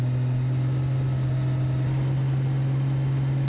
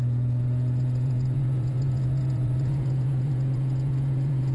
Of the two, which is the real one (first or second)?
first